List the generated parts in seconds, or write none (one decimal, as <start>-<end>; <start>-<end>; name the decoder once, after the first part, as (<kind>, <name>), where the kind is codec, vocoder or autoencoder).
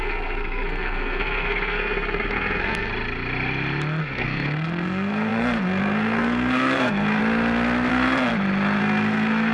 0.0-2.9 (codec, SNAC); 4.0-7.2; 7.9-8.3; 8.8-9.5